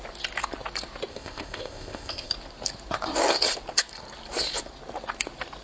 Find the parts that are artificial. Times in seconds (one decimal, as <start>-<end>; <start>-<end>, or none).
1.1-2.3